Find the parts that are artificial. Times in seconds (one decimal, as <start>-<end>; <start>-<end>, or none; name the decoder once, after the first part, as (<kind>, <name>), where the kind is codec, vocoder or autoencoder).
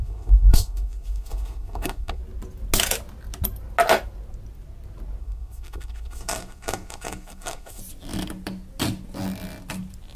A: 0.0-2.2 (codec, SNAC); 5.2-7.8